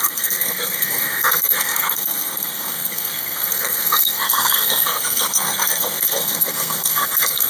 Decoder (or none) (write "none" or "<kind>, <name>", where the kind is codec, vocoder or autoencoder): codec, SNAC